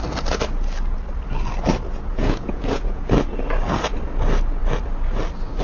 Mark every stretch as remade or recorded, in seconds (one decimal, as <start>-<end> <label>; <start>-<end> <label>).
0.0-2.1 recorded; 2.1-3.0 remade; 3.0-5.6 recorded